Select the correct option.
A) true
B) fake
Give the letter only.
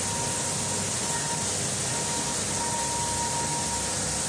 A